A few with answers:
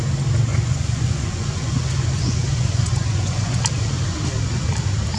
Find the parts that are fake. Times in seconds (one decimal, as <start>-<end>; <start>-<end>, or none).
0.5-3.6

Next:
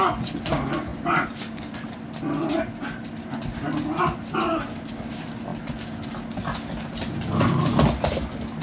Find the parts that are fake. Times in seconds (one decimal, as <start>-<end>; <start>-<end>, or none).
none

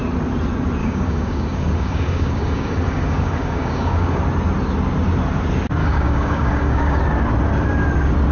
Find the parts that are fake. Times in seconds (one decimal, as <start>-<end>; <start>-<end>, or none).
0.8-4.2; 5.8-7.0